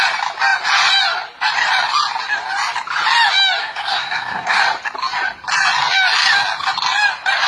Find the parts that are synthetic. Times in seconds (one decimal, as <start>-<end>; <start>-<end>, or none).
3.6-4.6